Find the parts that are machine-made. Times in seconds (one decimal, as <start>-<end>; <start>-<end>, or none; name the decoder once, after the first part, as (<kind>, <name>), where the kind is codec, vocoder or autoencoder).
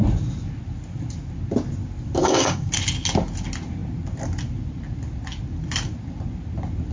2.2-2.7 (codec, DAC)